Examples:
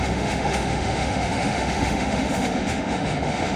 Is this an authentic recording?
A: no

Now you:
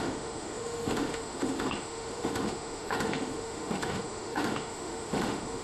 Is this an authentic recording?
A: no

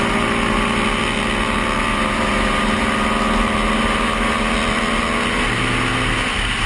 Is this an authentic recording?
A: yes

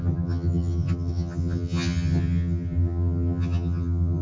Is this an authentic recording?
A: no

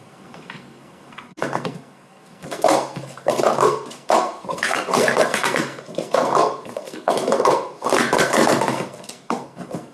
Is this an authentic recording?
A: no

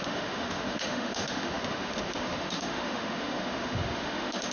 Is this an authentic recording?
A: no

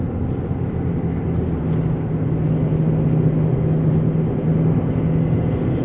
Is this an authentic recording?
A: yes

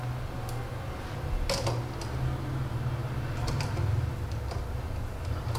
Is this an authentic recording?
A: yes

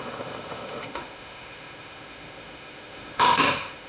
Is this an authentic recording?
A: no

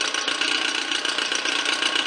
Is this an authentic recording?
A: yes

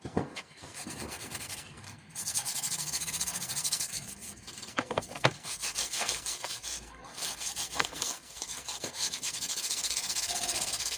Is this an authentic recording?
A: no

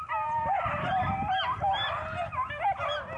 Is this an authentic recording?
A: yes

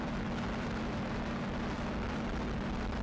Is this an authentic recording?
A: no